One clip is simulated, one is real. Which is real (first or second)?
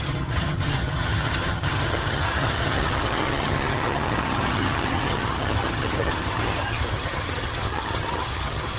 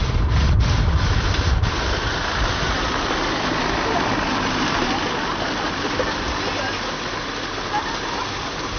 second